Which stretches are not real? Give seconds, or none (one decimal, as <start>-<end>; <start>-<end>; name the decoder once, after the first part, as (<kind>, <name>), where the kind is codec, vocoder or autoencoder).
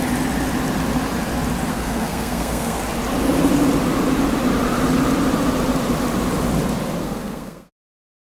1.7-2.8 (codec, SNAC); 7.0-8.4